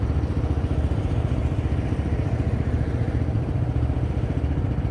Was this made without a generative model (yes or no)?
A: no